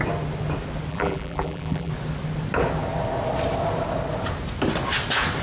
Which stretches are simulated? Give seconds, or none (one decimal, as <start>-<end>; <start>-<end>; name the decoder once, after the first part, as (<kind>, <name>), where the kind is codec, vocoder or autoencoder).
0.9-1.9 (vocoder, BigVGAN v2)